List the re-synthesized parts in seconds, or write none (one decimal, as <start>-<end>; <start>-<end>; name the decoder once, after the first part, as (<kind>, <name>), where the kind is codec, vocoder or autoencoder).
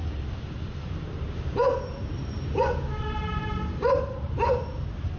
0.0-3.5 (vocoder, BigVGAN v2)